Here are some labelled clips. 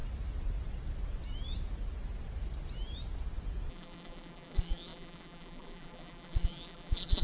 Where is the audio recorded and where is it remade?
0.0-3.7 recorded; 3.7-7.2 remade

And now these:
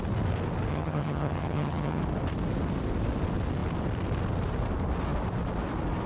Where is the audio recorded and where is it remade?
0.0-0.7 recorded; 0.7-2.0 remade; 2.0-6.1 recorded

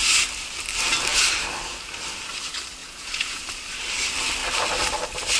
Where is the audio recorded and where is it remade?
0.0-2.8 recorded; 2.8-3.4 remade; 3.4-5.4 recorded

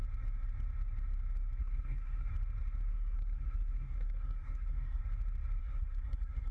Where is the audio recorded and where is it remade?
0.0-1.6 recorded; 1.6-2.3 remade; 2.3-2.9 recorded; 2.9-5.0 remade; 5.0-5.6 recorded; 5.6-6.5 remade

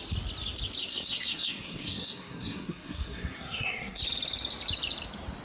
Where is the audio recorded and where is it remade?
0.0-0.8 recorded; 0.8-4.0 remade; 4.0-5.4 recorded

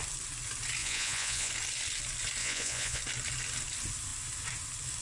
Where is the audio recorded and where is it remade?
0.0-0.8 recorded; 0.8-1.5 remade; 1.5-2.4 recorded; 2.4-3.0 remade; 3.0-5.0 recorded